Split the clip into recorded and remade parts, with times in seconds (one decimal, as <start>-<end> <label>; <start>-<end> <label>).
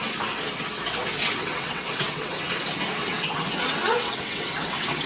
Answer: 0.0-1.2 recorded; 1.2-2.3 remade; 2.3-3.0 recorded; 3.0-5.1 remade